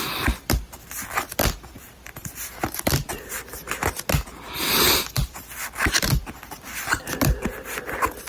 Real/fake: real